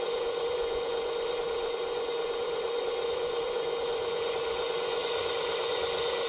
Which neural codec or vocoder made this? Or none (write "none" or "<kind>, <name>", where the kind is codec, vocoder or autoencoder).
vocoder, Vocos